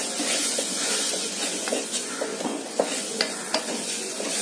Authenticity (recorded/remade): remade